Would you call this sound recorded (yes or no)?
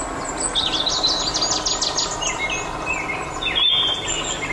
yes